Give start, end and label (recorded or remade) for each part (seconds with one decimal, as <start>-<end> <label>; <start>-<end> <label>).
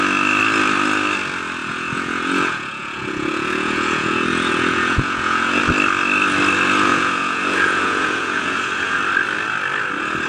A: 0.0-1.6 recorded; 1.6-5.6 remade; 5.6-6.9 recorded; 6.9-9.0 remade; 9.0-10.3 recorded